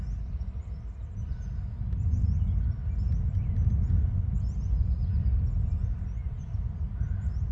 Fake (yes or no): no